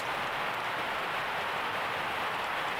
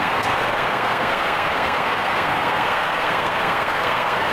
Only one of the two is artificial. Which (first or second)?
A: second